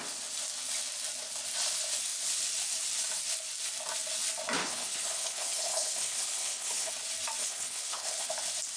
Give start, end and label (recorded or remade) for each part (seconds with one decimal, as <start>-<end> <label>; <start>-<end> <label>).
0.0-4.6 recorded; 4.6-6.9 remade; 6.9-7.4 recorded; 7.4-8.3 remade; 8.3-8.8 recorded